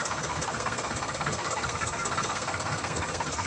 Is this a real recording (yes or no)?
no